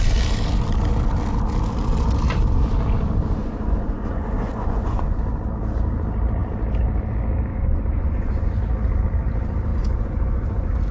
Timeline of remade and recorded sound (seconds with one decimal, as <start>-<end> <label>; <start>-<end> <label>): 0.0-3.4 recorded; 3.4-5.2 remade; 5.2-7.5 recorded; 7.5-8.6 remade; 8.6-9.7 recorded; 9.7-10.9 remade